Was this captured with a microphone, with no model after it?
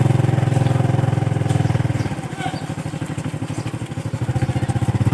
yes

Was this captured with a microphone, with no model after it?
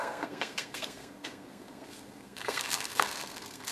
no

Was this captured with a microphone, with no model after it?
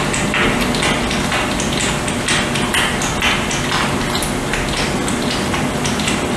yes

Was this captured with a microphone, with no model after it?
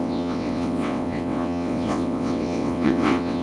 no